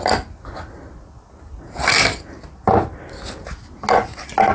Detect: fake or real real